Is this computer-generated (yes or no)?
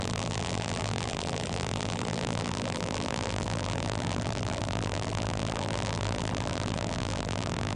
yes